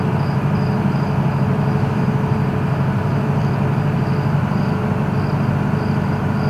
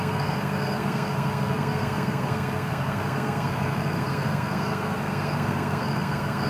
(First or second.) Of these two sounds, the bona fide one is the first